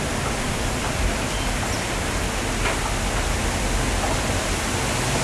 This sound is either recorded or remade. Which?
recorded